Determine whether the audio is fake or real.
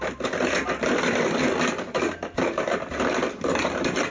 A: real